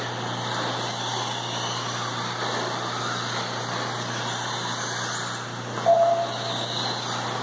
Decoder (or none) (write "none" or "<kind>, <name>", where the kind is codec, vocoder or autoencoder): none